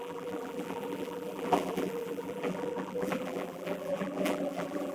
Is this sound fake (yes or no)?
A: yes